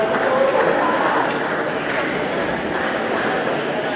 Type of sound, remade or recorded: recorded